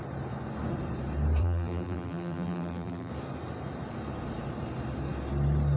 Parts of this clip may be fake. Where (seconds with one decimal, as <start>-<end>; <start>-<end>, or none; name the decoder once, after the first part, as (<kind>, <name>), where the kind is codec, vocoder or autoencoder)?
1.4-3.1 (vocoder, BigVGAN v2)